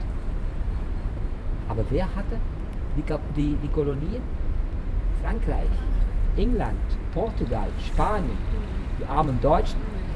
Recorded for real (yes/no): no